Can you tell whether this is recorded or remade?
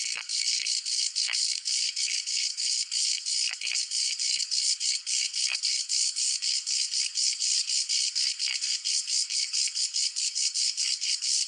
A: remade